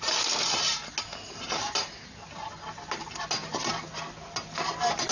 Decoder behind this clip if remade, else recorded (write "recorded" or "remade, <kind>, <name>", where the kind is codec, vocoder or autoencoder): recorded